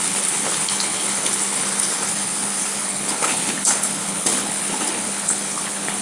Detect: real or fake fake